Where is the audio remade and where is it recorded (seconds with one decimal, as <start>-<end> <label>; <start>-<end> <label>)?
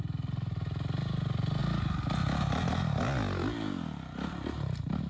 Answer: 0.0-1.6 remade; 1.6-5.1 recorded